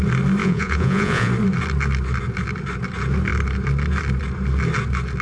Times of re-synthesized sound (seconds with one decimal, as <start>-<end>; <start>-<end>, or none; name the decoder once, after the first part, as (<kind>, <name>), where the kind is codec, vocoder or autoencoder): 0.4-1.3 (vocoder, Vocos)